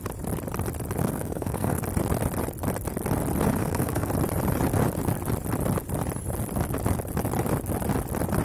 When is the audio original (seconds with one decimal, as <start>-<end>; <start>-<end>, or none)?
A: 0.0-1.0; 1.8-3.6; 4.1-8.4